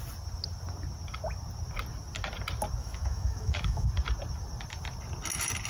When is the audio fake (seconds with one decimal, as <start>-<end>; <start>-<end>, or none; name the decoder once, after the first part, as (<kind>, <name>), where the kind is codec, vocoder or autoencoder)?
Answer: 2.8-3.9 (autoencoder, DAC-VAE)